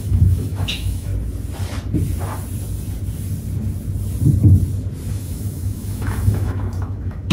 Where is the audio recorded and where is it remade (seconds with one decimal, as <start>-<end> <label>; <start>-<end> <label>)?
0.0-1.1 remade; 1.1-5.1 recorded; 5.1-7.3 remade